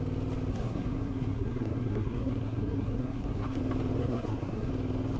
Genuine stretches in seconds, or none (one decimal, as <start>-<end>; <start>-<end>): 0.0-0.5; 3.6-4.0; 4.7-5.2